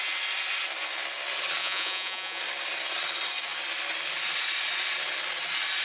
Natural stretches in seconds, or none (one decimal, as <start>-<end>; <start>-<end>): 0.0-1.6; 2.4-5.8